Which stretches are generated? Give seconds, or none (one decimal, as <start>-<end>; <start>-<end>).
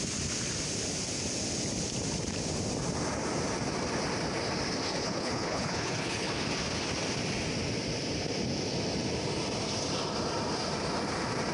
5.0-6.3